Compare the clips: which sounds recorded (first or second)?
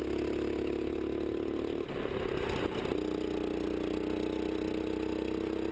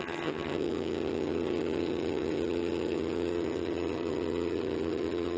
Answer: first